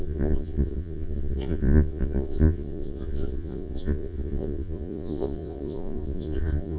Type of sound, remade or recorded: remade